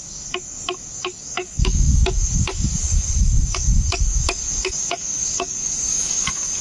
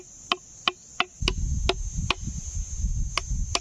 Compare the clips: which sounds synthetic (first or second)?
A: first